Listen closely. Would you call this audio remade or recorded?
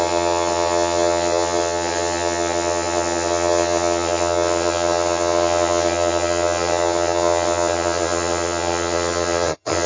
remade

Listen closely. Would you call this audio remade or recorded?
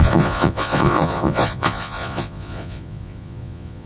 remade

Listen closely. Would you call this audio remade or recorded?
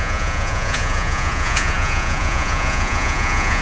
remade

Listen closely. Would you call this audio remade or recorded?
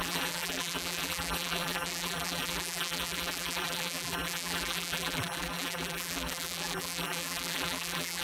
remade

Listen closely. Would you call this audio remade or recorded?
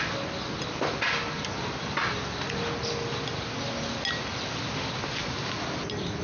recorded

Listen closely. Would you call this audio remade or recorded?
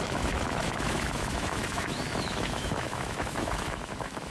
remade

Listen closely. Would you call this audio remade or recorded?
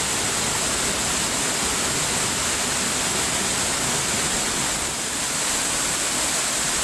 recorded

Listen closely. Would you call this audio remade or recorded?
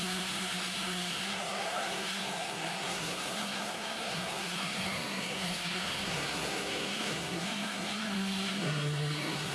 remade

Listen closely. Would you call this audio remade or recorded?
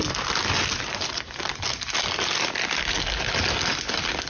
recorded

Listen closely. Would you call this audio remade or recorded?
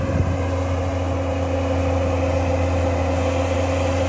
recorded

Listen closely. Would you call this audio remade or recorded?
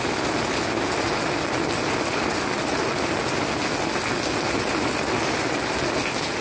recorded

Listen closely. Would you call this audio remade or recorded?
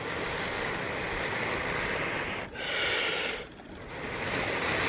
recorded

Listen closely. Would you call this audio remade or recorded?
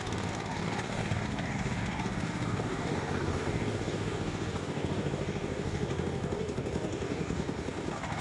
remade